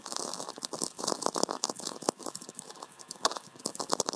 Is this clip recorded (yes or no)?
no